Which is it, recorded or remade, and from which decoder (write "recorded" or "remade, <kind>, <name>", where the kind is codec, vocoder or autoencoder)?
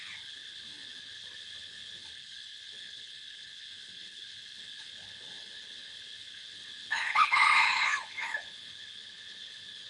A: remade, codec, HILCodec